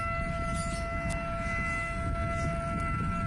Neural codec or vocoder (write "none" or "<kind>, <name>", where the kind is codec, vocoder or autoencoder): none